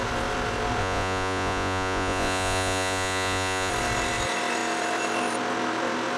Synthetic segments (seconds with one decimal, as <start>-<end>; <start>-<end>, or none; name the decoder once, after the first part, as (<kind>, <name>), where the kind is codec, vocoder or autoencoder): 0.8-3.7 (vocoder, Vocos)